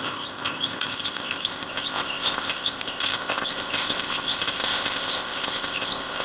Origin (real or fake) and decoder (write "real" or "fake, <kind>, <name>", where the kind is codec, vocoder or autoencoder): fake, codec, ZipCodec